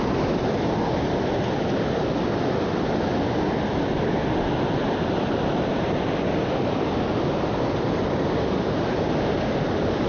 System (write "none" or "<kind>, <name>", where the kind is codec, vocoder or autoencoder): none